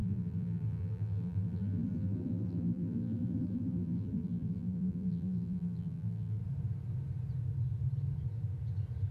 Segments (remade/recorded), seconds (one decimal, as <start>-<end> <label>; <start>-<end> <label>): 0.0-6.4 remade; 6.4-9.1 recorded